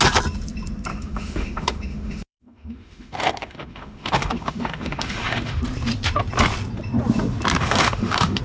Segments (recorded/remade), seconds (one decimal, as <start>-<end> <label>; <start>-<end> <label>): 0.0-0.9 recorded; 0.9-5.6 remade; 5.6-7.6 recorded; 7.6-8.4 remade